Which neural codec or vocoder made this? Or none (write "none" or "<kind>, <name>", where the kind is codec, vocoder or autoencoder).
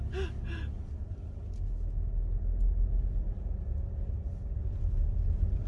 none